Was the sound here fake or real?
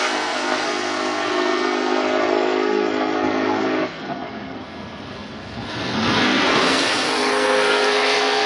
fake